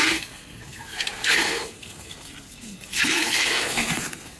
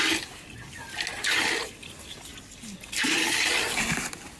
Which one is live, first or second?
second